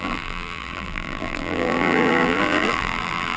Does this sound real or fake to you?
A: fake